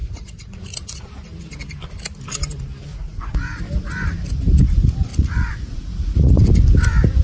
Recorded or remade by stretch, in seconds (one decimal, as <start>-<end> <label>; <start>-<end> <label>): 0.0-0.6 remade; 0.6-2.9 recorded; 2.9-3.6 remade; 3.6-5.1 recorded; 5.1-6.4 remade; 6.4-7.2 recorded